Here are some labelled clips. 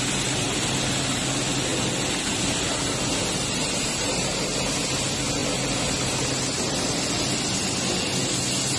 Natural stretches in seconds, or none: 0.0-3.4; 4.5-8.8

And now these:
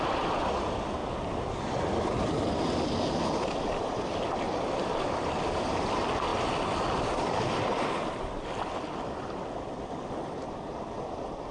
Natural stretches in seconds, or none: 1.0-3.2; 6.3-9.4